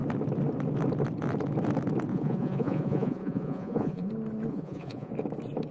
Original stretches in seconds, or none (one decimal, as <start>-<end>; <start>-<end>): 0.0-2.1; 4.1-4.5; 5.1-5.7